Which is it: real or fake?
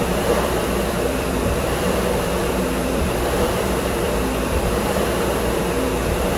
fake